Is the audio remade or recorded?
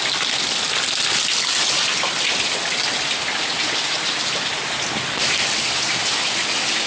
recorded